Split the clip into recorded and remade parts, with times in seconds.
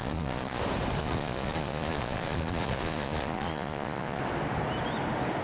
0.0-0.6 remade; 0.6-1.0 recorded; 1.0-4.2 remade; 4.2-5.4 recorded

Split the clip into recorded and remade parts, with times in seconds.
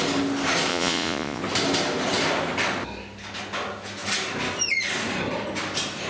0.0-0.7 recorded; 0.7-1.4 remade; 1.4-6.1 recorded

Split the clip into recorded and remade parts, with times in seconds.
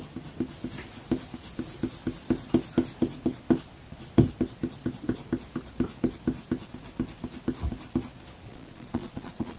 0.0-8.5 recorded; 8.5-9.6 remade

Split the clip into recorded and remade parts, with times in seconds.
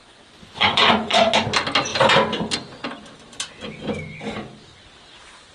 0.0-1.3 remade; 1.3-5.5 recorded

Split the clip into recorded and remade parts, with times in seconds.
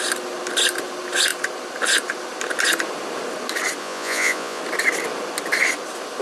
0.0-3.8 recorded; 3.8-4.6 remade; 4.6-6.2 recorded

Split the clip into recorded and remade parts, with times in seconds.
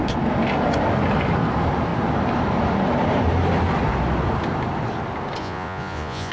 0.0-5.4 recorded; 5.4-6.3 remade